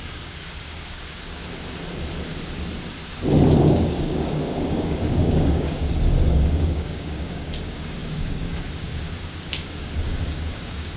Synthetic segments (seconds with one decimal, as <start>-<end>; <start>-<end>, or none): 0.0-1.4; 3.6-11.0